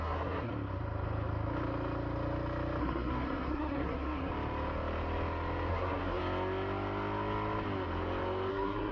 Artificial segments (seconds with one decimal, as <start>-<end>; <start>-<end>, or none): 0.0-0.5; 2.8-4.3; 5.7-6.2; 8.5-8.9